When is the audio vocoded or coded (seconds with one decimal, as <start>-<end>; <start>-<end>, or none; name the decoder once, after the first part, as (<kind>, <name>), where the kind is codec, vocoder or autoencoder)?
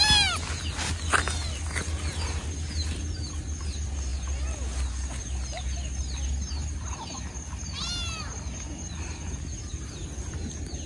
none